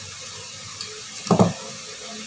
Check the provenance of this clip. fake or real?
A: real